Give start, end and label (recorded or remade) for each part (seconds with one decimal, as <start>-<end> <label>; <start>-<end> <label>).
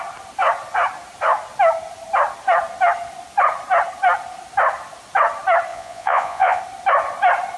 0.0-5.7 recorded; 5.7-6.6 remade; 6.6-7.6 recorded